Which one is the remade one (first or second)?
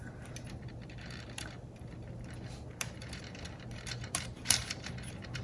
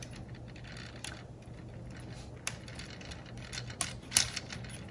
first